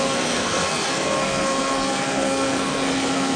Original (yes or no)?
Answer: no